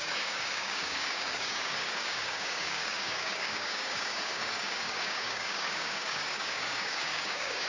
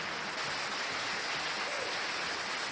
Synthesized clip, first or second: first